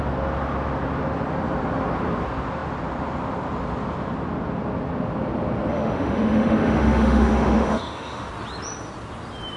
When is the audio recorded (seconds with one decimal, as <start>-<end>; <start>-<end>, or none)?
0.0-5.7; 8.3-9.6